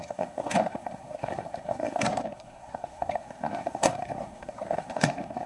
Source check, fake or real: fake